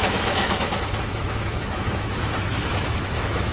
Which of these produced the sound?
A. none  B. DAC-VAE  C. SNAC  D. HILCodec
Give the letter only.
B